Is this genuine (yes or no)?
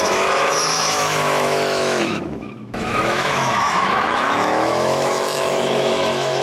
no